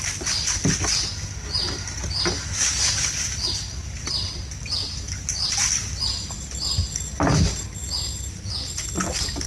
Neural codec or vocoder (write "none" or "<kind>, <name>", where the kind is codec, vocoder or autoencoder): none